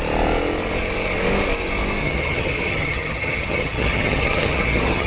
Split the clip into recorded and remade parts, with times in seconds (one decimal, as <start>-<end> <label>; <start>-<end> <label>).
0.0-2.0 recorded; 2.0-5.1 remade